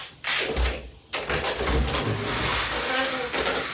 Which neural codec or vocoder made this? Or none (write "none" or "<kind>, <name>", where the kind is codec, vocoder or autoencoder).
none